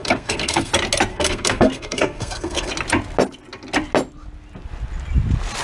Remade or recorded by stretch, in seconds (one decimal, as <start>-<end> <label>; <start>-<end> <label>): 0.0-0.7 remade; 0.7-1.1 recorded; 1.1-2.7 remade; 2.7-5.6 recorded